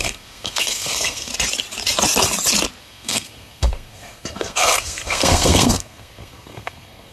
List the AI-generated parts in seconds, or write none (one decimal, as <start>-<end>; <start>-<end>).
0.0-1.3; 2.8-7.1